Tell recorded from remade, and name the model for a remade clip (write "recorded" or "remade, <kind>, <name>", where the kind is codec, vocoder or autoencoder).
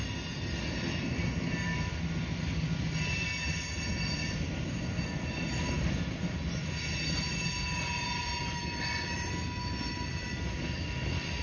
recorded